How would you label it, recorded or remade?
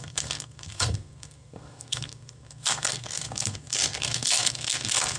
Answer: remade